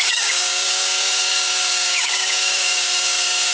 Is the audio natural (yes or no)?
no